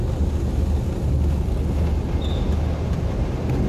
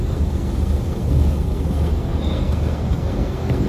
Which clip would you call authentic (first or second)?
first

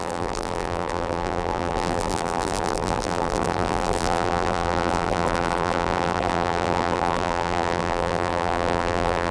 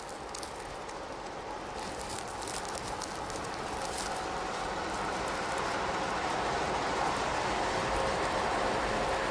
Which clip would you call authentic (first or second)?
second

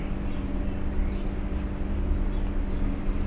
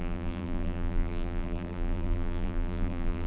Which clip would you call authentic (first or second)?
first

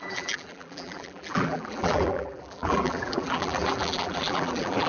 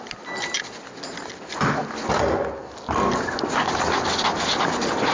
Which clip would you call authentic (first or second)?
second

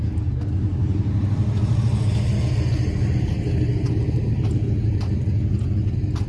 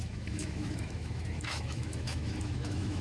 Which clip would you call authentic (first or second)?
first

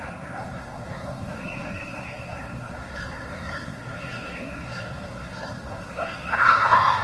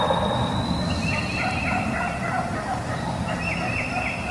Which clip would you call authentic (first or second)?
second